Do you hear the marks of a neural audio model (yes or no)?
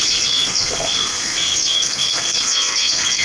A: yes